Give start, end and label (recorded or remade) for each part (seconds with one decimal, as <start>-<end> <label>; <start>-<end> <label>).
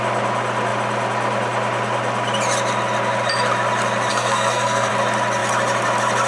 0.0-4.1 recorded; 4.1-4.9 remade; 4.9-6.3 recorded